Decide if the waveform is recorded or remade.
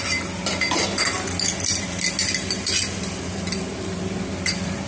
recorded